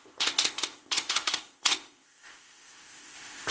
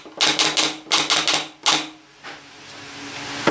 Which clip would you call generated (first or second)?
first